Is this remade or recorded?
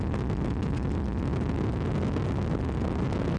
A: recorded